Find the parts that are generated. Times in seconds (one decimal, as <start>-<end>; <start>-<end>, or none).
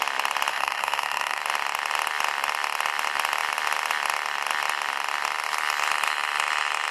0.5-1.4